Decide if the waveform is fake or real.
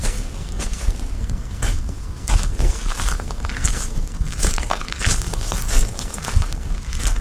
fake